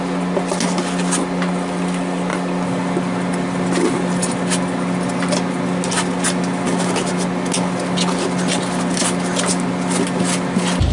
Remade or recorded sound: recorded